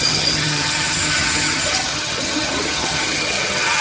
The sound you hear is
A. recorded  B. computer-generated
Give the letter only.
B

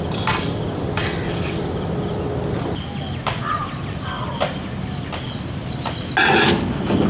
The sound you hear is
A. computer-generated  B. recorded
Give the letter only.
B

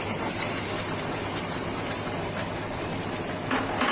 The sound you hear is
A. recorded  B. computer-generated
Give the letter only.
A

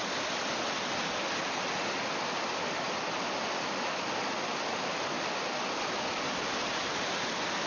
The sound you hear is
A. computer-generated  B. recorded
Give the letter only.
B